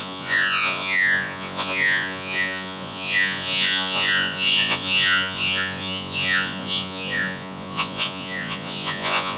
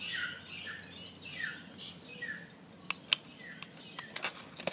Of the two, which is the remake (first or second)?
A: first